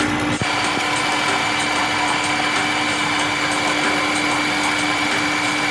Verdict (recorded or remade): recorded